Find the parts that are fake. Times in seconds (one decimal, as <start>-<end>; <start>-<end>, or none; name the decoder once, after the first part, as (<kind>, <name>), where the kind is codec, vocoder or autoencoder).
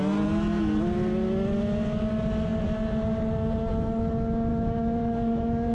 4.5-5.7 (autoencoder, DAC-VAE)